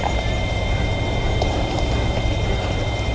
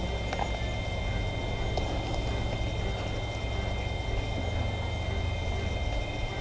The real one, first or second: second